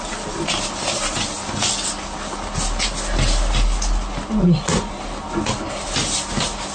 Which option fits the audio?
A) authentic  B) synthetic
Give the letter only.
A